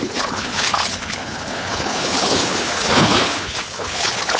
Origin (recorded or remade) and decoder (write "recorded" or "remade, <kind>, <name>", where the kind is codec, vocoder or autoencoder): remade, codec, HILCodec